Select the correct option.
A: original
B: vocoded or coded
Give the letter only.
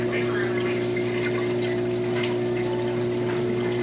A